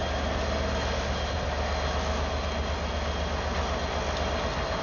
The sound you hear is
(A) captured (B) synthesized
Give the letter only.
A